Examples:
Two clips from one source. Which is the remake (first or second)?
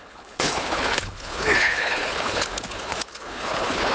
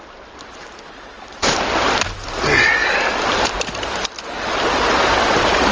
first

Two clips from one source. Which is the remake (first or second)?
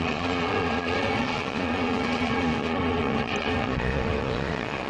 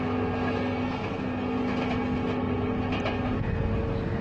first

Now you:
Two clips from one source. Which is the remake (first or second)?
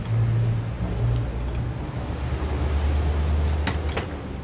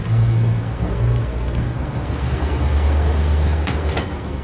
second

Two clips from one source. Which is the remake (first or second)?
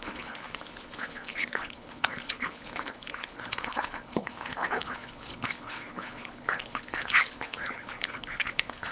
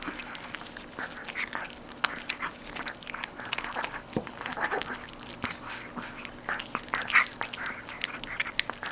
first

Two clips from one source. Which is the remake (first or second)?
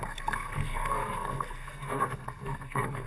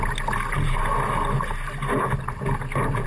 first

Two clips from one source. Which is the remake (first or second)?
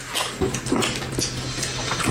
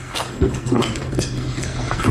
second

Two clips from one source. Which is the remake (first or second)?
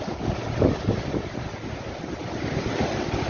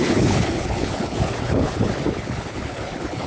second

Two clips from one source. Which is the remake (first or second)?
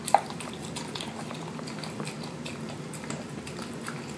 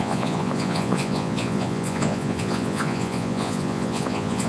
second